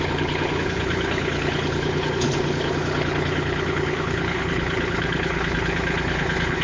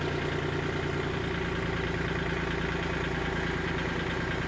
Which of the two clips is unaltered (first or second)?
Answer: second